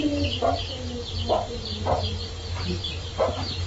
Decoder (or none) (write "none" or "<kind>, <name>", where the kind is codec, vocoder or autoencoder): none